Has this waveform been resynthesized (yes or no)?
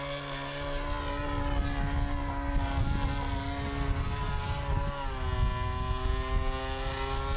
no